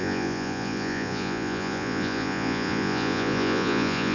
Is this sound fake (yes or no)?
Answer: yes